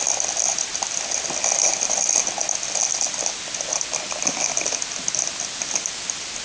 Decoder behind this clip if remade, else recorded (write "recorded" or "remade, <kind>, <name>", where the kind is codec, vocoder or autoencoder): recorded